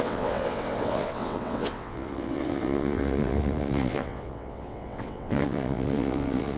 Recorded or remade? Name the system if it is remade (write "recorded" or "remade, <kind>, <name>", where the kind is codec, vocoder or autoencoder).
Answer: remade, vocoder, WaveNeXt